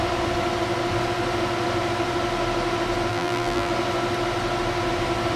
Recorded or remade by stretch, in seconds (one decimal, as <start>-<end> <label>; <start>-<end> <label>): 0.0-3.1 recorded; 3.1-3.7 remade; 3.7-5.4 recorded